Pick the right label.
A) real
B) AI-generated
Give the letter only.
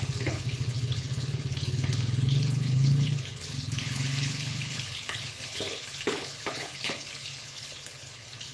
B